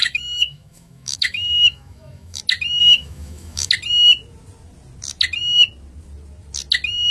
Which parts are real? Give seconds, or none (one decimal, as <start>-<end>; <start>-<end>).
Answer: 2.4-2.8; 3.7-7.1